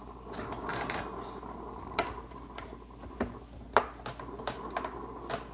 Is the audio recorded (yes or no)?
yes